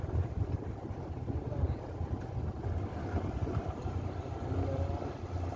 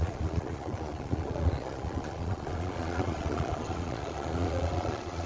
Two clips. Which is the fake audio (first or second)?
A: second